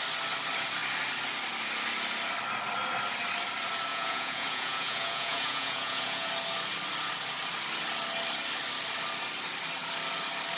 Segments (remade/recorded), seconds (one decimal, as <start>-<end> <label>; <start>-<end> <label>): 0.0-3.9 recorded; 3.9-6.3 remade; 6.3-10.6 recorded